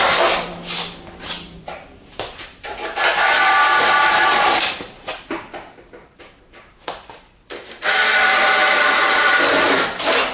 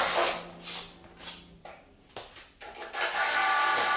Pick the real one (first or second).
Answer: second